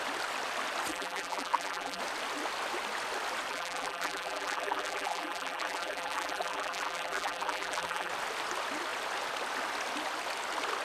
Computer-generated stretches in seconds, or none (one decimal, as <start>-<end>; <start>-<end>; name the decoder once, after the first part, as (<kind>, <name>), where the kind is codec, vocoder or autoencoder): 0.9-2.0 (vocoder, BigVGAN v2); 3.5-8.1